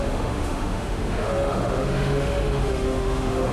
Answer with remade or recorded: remade